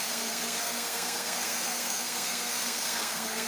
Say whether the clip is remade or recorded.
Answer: remade